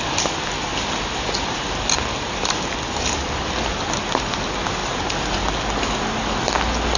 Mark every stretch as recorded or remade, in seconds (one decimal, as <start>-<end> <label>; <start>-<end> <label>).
0.0-7.0 recorded